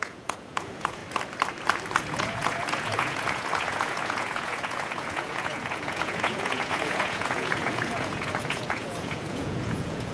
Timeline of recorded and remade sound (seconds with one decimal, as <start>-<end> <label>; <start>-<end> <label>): 0.0-1.0 remade; 1.0-2.0 recorded; 2.0-10.1 remade